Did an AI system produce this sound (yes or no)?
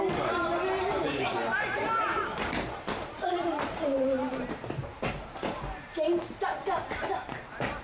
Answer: yes